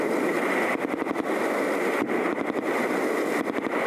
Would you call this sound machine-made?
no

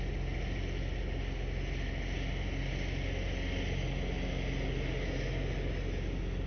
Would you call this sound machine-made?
no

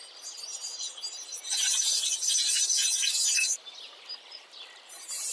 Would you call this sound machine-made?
no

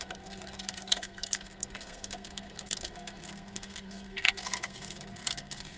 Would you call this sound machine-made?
yes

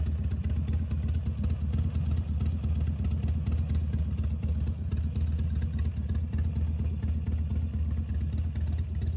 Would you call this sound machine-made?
no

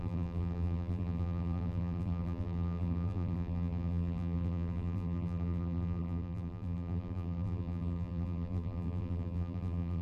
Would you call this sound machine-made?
yes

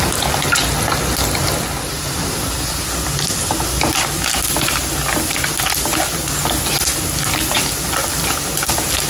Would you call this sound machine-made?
no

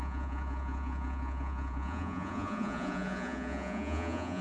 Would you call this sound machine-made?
yes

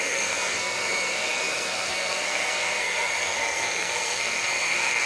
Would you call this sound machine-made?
yes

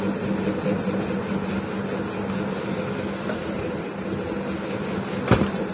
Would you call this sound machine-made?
no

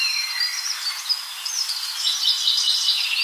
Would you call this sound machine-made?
no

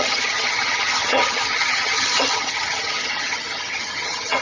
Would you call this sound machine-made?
yes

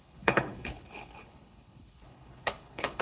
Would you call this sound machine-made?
yes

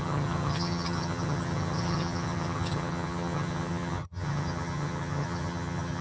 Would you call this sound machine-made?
yes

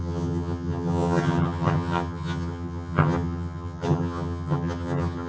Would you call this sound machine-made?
yes